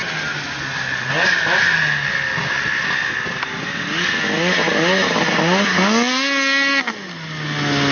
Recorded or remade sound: recorded